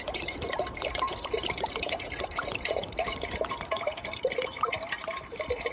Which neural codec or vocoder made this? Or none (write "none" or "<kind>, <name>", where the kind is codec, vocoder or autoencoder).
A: vocoder, BigVGAN v2